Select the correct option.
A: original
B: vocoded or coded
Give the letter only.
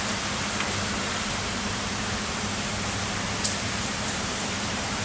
B